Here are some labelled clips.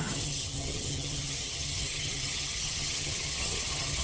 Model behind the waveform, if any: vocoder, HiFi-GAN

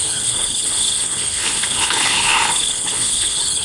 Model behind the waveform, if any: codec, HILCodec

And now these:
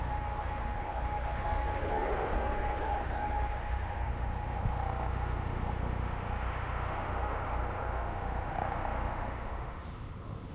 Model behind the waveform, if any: autoencoder, DAC-VAE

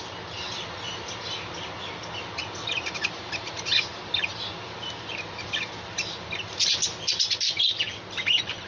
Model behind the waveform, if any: none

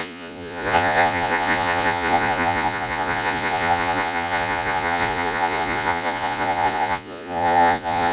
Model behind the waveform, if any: vocoder, Vocos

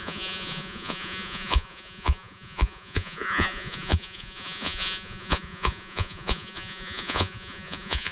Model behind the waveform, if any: vocoder, Vocos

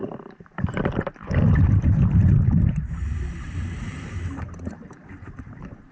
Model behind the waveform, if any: vocoder, BigVGAN v2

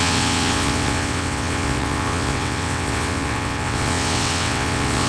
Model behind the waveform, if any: vocoder, WaveNeXt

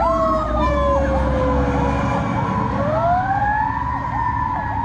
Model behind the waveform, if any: none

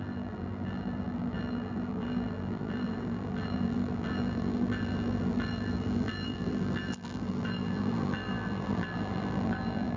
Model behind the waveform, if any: vocoder, BigVGAN v2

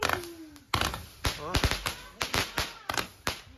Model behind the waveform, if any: none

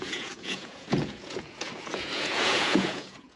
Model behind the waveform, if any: vocoder, Vocos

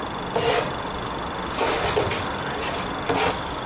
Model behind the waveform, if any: none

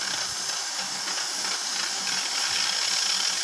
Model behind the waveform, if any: none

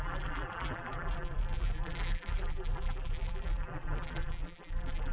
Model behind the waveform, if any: vocoder, BigVGAN v2